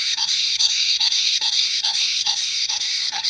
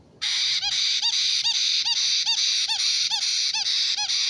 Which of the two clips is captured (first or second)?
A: second